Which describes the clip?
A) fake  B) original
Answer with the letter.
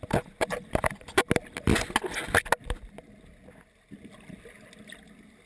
B